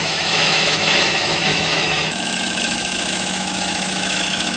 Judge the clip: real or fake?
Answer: fake